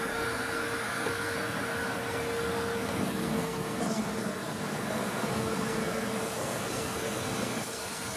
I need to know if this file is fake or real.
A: fake